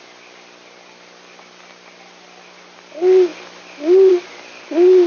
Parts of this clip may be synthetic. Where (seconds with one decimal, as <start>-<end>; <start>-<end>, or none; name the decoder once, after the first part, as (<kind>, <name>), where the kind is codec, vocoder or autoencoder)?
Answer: none